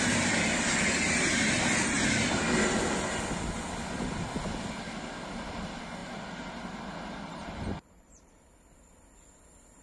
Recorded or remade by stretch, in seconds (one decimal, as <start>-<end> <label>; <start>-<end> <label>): 0.0-6.0 recorded; 6.0-6.8 remade; 6.8-7.4 recorded; 7.4-9.0 remade; 9.0-9.8 recorded